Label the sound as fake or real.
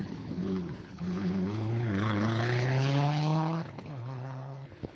fake